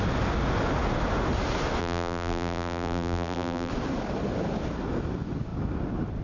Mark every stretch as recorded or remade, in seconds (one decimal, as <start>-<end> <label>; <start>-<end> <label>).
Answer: 0.0-1.8 recorded; 1.8-3.7 remade; 3.7-6.2 recorded